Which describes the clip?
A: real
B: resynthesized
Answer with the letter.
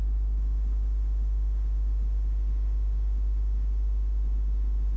B